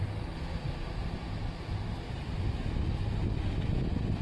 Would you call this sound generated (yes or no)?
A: no